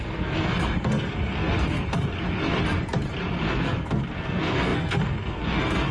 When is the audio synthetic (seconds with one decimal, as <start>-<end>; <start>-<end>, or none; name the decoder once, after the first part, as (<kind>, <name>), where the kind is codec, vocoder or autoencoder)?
0.0-2.1 (codec, SNAC); 3.4-5.9